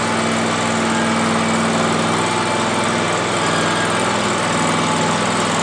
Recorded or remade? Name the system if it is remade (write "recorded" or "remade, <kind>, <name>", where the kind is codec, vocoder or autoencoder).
recorded